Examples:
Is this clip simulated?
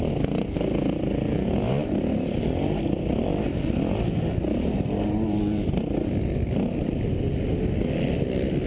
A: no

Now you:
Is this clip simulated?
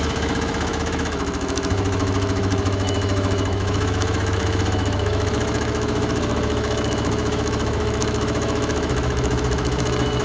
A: yes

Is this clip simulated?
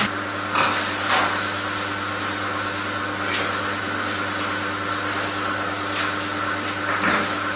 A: no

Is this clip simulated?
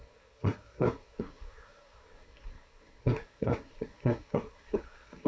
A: yes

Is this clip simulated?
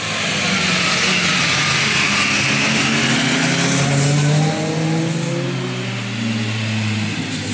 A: no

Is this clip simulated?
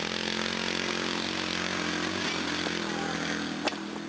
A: no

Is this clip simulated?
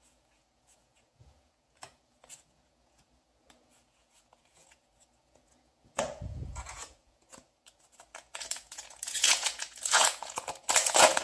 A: yes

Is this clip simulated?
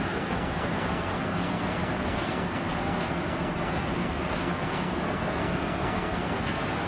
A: yes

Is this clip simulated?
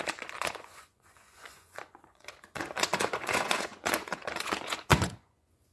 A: yes